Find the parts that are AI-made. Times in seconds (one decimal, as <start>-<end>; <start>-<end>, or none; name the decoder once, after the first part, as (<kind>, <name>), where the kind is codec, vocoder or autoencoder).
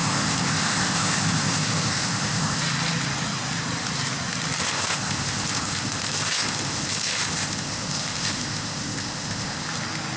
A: 0.0-2.6 (codec, ZipCodec); 4.6-9.7